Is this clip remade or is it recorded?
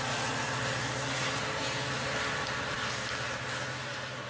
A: recorded